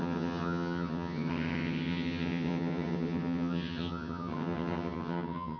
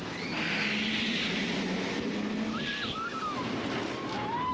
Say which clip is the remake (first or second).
first